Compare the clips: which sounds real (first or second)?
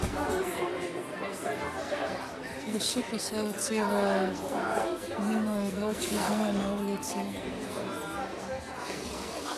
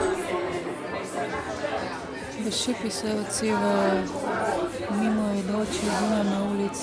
second